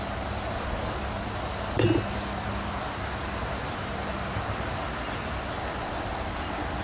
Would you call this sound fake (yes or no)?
no